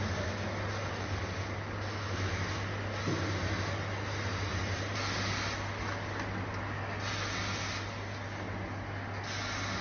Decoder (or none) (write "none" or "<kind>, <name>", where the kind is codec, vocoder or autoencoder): none